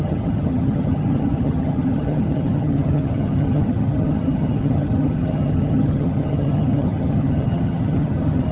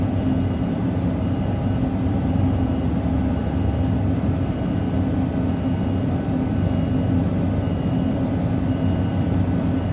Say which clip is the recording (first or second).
second